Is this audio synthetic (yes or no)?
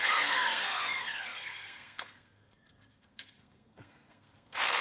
yes